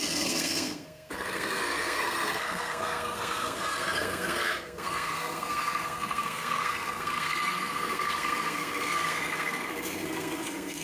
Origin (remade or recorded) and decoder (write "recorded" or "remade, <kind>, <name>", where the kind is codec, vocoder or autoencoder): remade, codec, SNAC